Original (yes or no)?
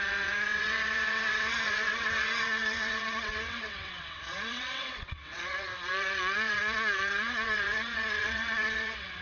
no